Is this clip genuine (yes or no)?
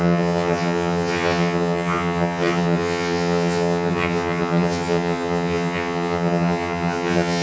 no